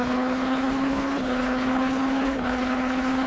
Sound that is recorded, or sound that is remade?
remade